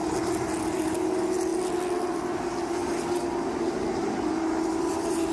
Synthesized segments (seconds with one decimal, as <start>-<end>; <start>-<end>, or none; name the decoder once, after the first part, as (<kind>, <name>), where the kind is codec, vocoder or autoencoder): none